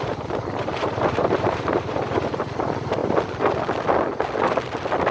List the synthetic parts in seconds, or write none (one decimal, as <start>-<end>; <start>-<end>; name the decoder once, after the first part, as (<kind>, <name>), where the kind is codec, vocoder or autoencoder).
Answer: 0.6-2.5 (vocoder, BigVGAN v2)